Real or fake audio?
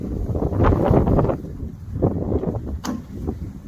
real